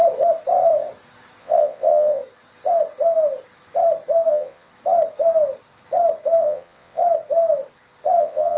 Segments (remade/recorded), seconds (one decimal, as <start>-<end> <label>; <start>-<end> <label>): 0.0-1.4 recorded; 1.4-2.2 remade; 2.2-4.3 recorded; 4.3-4.7 remade; 4.7-6.4 recorded; 6.4-7.0 remade; 7.0-8.2 recorded; 8.2-8.6 remade